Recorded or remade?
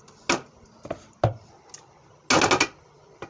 recorded